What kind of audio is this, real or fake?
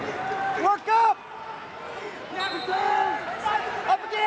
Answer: real